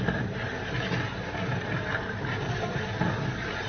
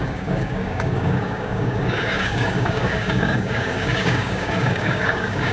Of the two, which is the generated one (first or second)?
second